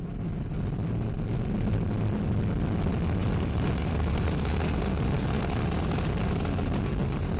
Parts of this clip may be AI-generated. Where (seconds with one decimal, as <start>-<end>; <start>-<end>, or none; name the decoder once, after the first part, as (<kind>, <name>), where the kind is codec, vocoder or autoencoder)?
3.2-7.4 (vocoder, BigVGAN v2)